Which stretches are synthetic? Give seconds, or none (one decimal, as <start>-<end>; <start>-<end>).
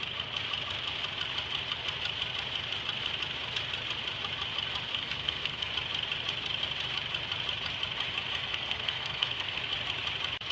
4.9-5.7; 8.5-9.6